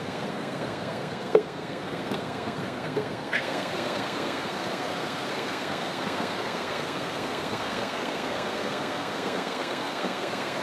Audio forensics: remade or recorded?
remade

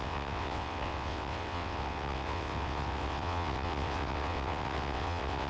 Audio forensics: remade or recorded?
remade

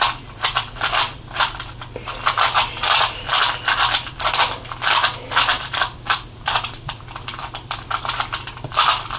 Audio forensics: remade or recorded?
remade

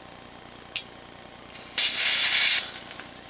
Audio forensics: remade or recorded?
recorded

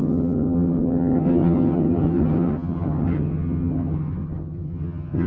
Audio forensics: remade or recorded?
remade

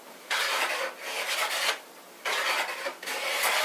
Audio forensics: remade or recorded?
recorded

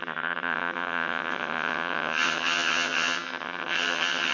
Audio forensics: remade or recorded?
remade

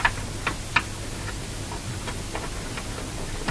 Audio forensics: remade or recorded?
recorded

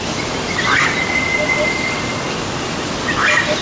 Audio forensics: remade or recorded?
recorded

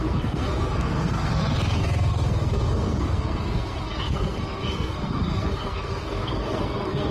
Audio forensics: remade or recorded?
remade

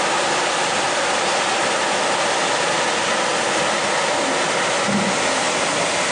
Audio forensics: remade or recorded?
recorded